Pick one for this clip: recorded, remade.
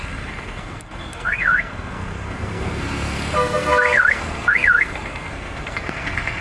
remade